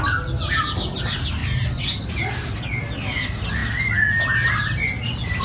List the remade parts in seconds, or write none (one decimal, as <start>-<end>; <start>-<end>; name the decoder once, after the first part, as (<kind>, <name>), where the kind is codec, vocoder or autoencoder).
none